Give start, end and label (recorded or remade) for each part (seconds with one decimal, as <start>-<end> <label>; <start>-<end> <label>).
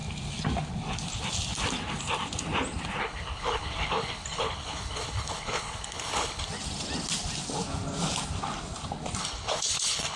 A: 0.0-3.0 recorded; 3.0-6.5 remade; 6.5-9.2 recorded; 9.2-10.2 remade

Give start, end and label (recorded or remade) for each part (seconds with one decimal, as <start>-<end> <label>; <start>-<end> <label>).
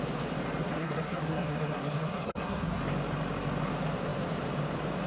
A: 0.0-0.6 recorded; 0.6-2.8 remade; 2.8-5.1 recorded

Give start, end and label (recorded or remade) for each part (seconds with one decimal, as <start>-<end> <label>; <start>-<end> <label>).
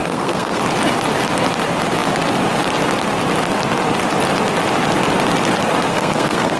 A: 0.0-0.6 remade; 0.6-5.9 recorded; 5.9-6.6 remade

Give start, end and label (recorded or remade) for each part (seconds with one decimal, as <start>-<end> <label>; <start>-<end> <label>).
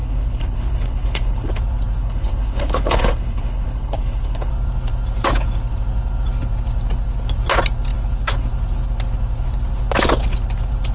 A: 0.0-1.5 remade; 1.5-2.0 recorded; 2.0-4.5 remade; 4.5-10.9 recorded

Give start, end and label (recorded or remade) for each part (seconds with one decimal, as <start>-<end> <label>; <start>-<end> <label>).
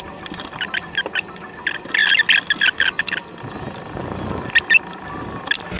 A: 0.0-5.8 recorded